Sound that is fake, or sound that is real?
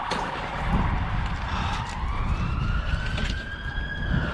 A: real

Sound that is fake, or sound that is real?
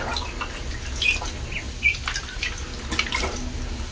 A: real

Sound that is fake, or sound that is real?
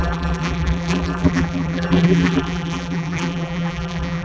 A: fake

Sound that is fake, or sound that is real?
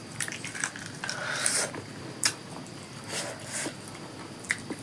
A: fake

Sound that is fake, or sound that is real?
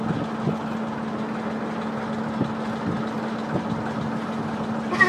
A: real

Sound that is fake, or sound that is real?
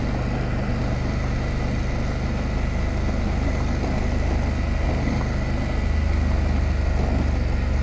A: real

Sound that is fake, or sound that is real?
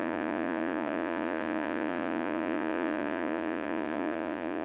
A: fake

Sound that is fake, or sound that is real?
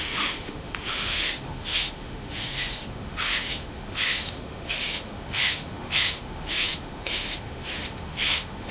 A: fake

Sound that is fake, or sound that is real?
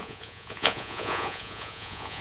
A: fake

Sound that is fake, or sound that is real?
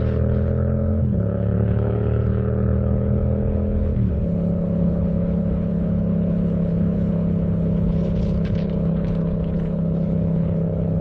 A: fake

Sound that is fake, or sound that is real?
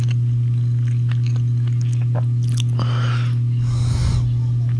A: real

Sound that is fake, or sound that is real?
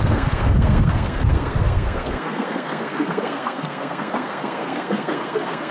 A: fake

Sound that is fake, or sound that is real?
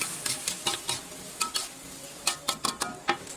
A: real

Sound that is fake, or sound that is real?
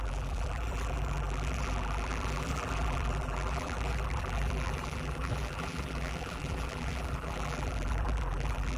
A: fake